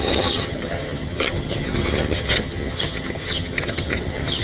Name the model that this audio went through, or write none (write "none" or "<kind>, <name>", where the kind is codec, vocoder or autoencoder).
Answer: vocoder, HiFi-GAN